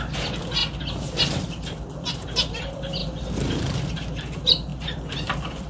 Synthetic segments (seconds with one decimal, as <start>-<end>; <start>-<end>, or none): 4.7-5.7